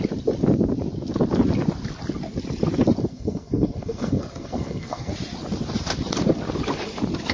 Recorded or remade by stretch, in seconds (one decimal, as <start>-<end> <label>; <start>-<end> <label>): 0.0-3.1 recorded; 3.1-5.1 remade; 5.1-7.3 recorded